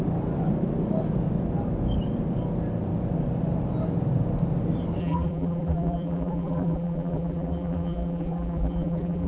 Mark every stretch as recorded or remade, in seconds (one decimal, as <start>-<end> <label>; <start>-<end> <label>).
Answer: 0.0-5.0 recorded; 5.0-9.3 remade